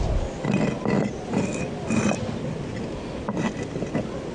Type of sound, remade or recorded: recorded